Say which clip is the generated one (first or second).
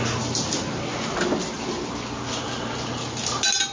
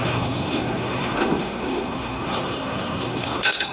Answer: second